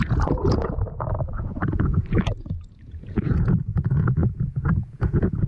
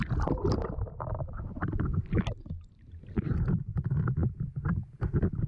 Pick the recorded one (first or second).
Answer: second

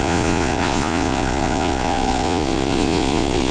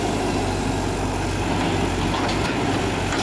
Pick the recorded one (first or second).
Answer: second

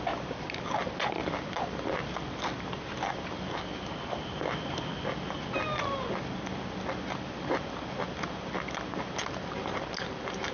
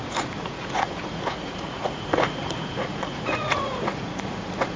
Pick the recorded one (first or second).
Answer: first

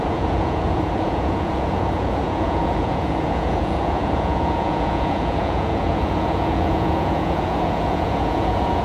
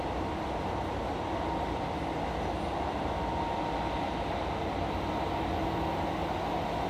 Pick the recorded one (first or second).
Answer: second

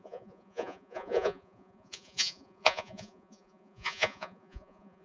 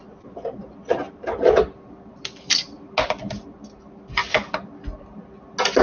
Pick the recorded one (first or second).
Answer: second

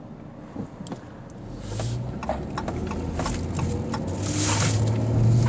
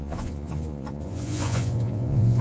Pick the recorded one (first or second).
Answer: first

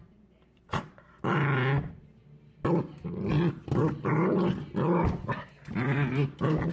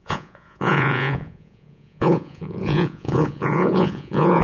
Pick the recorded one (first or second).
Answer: first